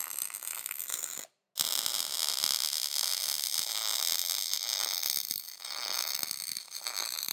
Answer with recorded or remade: recorded